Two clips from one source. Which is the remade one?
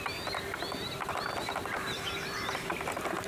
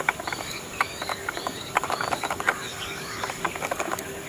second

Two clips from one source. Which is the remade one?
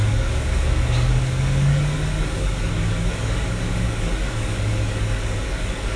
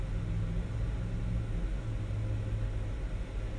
first